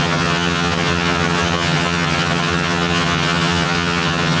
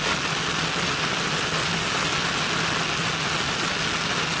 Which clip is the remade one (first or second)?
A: first